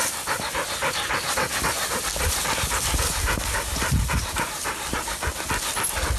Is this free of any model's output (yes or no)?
yes